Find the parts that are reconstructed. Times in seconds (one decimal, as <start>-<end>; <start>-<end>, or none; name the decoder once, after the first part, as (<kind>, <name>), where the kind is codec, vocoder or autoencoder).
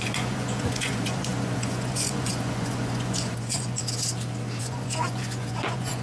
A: 0.0-3.8 (vocoder, Vocos); 4.6-6.0